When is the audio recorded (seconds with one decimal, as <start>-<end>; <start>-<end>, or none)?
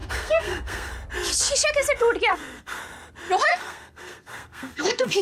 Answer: 0.9-2.3; 2.8-3.5